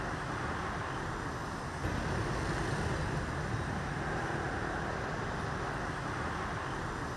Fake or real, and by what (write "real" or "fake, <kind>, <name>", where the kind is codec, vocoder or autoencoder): real